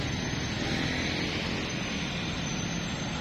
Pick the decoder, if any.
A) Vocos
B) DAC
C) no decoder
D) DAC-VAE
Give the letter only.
C